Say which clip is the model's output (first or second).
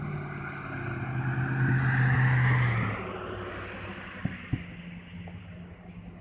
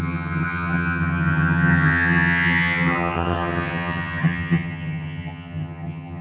second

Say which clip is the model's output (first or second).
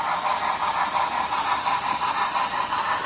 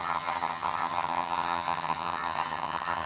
second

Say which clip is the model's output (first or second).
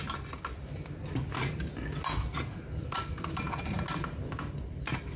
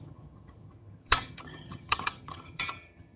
second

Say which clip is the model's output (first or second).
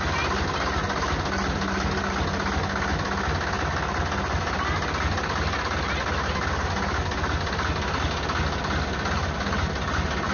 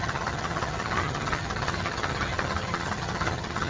second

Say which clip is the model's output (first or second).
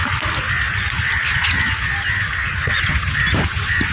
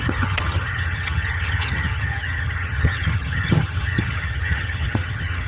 second